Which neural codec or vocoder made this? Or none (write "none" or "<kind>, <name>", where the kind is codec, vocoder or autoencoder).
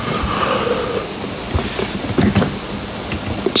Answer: none